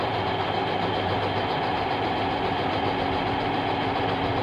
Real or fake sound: real